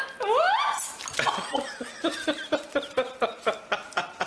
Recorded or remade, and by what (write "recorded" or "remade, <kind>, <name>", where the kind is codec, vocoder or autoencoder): recorded